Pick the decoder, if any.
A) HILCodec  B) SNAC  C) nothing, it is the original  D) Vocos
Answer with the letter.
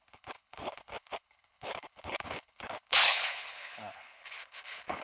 A